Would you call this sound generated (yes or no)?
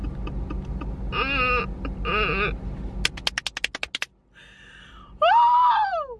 no